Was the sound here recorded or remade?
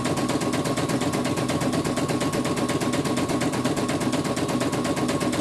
recorded